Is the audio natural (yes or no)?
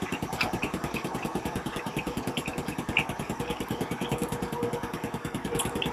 no